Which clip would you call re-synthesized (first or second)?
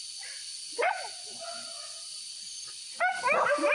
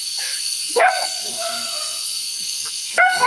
second